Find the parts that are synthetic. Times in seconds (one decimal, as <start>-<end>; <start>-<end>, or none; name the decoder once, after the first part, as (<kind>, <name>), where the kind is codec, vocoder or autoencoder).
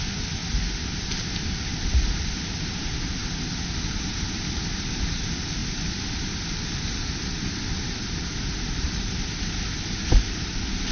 none